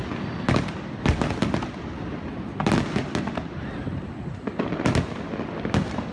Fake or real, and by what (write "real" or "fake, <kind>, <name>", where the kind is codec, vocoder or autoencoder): real